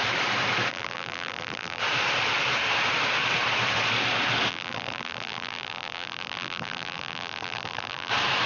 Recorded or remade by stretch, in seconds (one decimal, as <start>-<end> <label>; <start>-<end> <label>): 0.0-0.7 recorded; 0.7-1.8 remade; 1.8-4.5 recorded; 4.5-8.1 remade; 8.1-8.5 recorded

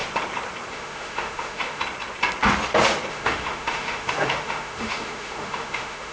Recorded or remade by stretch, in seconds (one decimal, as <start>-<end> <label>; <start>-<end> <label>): 0.0-0.7 recorded; 0.7-1.8 remade; 1.8-3.1 recorded; 3.1-6.1 remade

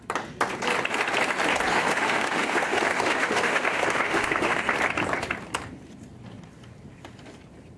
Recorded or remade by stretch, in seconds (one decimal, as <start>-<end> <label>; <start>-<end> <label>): 0.0-1.7 recorded; 1.7-4.6 remade; 4.6-7.8 recorded

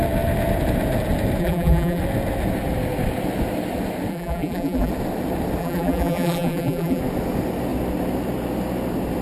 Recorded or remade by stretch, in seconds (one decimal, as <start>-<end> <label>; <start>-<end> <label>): 0.0-1.4 recorded; 1.4-2.0 remade; 2.0-4.1 recorded; 4.1-4.9 remade; 4.9-5.6 recorded; 5.6-7.0 remade; 7.0-9.2 recorded

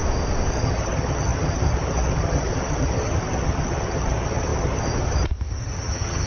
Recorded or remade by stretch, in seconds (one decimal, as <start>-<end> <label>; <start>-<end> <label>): 0.0-0.5 recorded; 0.5-6.3 remade